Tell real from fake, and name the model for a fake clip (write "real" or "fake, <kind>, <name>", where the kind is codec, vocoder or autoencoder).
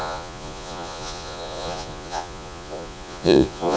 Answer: fake, vocoder, Vocos